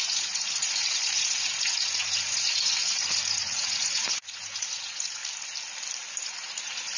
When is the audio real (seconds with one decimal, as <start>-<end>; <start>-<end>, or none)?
5.2-6.2